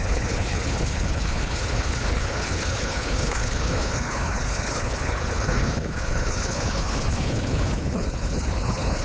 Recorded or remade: remade